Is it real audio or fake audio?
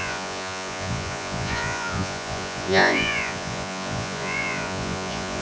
fake